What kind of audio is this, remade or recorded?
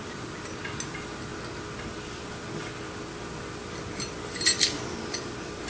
recorded